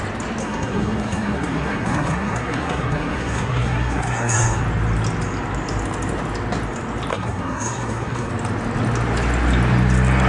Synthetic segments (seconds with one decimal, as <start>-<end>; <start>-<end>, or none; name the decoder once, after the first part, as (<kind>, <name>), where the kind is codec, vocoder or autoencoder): 0.4-4.6 (codec, SNAC); 7.1-8.3